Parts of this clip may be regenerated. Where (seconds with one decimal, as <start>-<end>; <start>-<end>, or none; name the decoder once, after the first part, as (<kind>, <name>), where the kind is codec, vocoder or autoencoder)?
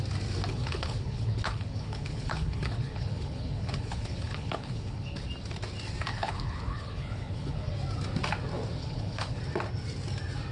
0.5-5.2 (codec, HILCodec); 6.1-7.7; 8.8-9.4